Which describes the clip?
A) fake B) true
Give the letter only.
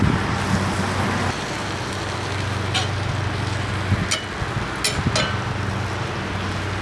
B